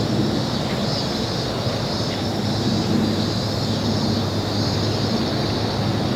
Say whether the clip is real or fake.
real